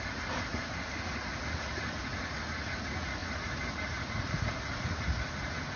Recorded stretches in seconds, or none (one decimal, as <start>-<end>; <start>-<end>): none

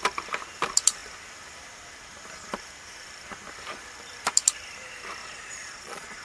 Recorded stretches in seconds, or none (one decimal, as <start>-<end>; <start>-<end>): 0.0-5.2

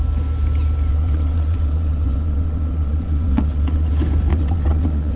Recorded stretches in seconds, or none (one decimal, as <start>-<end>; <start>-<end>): 0.0-0.9; 3.9-4.3